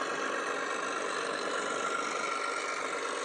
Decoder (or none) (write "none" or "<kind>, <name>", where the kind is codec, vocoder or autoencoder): none